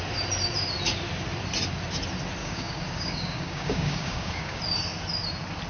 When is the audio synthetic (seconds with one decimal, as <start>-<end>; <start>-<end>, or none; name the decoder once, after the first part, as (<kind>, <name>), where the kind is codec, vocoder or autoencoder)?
2.4-4.6 (codec, DAC)